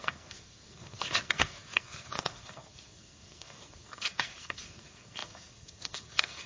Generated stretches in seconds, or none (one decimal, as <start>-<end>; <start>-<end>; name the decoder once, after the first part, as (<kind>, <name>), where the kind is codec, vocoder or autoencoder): 0.0-6.5 (codec, SNAC)